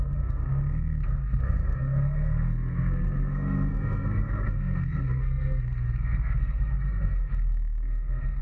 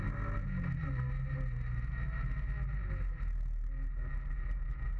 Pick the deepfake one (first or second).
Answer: first